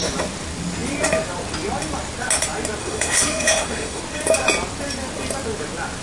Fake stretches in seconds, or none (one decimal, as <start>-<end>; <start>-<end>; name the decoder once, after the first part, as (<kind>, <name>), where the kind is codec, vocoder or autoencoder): 2.8-4.0 (autoencoder, DAC-VAE)

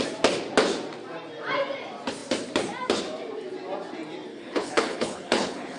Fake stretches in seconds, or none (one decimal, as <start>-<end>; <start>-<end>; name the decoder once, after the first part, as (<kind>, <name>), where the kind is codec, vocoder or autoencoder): 4.3-5.8 (codec, HILCodec)

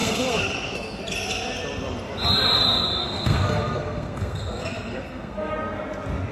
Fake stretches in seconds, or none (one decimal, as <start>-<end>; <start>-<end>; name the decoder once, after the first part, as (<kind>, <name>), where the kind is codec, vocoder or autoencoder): 0.0-1.0 (codec, SNAC); 3.0-5.5

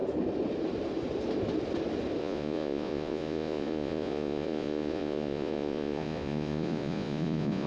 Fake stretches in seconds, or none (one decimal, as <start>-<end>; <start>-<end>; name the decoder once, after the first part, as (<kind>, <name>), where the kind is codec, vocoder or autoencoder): 2.2-7.7 (vocoder, Vocos)

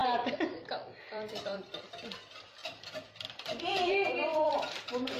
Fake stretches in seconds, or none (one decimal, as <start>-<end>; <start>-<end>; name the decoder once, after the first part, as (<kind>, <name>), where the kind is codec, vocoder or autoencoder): 0.0-5.2 (vocoder, BigVGAN v2)

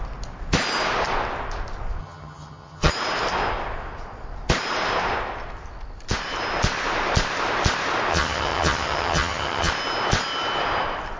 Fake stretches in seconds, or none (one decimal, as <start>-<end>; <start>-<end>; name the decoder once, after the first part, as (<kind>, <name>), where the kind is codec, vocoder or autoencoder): 2.0-2.9 (vocoder, HiFi-GAN); 8.1-9.7

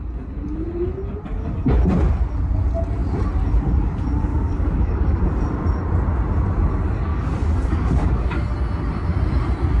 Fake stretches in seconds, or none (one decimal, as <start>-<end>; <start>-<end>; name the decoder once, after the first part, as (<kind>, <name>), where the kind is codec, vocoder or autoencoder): 4.3-5.2 (codec, DAC); 7.1-8.3

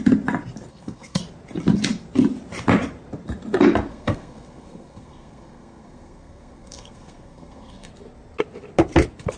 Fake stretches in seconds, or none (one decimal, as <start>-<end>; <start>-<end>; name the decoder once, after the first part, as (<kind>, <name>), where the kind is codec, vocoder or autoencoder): 0.7-1.2 (codec, SNAC); 3.9-7.9